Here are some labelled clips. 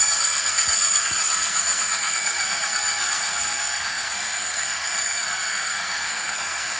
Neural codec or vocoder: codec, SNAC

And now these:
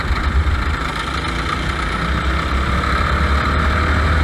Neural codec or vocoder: none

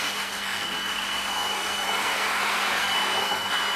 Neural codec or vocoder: codec, SNAC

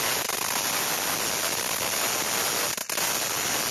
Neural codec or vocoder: none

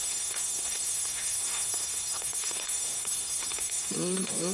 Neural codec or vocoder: codec, SNAC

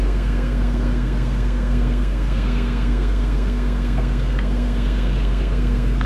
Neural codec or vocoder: codec, SNAC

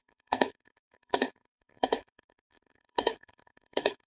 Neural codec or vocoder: codec, SNAC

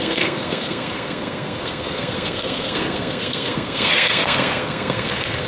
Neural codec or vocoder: codec, SNAC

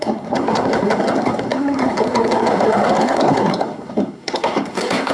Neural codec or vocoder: codec, SNAC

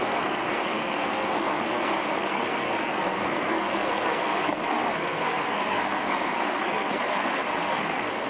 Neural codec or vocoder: codec, SNAC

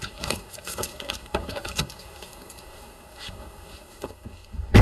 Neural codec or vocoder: codec, SNAC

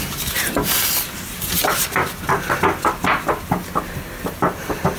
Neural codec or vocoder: none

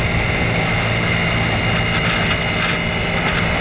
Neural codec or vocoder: none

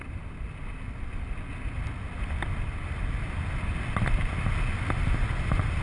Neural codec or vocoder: none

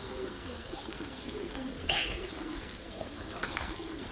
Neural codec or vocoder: codec, SNAC